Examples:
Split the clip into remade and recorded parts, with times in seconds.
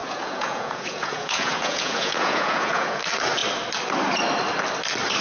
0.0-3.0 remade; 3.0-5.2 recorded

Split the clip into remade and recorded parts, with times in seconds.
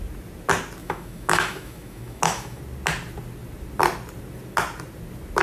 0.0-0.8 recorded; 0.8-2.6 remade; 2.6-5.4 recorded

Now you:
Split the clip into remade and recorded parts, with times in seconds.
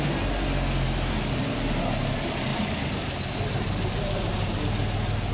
0.0-2.5 recorded; 2.5-4.6 remade; 4.6-5.3 recorded